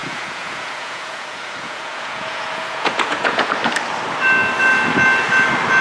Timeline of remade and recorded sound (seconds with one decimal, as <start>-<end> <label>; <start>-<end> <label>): 0.0-3.5 remade; 3.5-5.8 recorded